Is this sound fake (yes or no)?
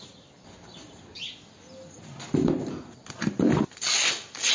no